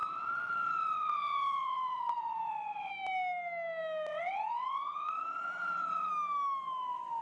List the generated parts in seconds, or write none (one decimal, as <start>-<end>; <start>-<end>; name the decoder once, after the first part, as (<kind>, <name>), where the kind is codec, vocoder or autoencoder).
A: 0.0-2.9 (vocoder, WaveNeXt); 4.1-6.1